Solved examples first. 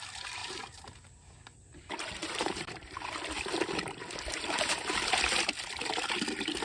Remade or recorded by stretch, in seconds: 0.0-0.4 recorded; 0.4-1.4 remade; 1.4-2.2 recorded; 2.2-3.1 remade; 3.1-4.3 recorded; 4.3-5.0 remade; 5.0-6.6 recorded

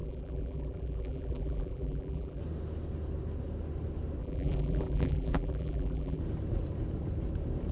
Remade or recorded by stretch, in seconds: 0.0-2.4 remade; 2.4-4.2 recorded; 4.2-6.2 remade; 6.2-7.7 recorded

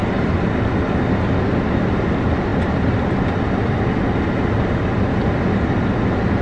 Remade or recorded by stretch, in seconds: 0.0-6.4 recorded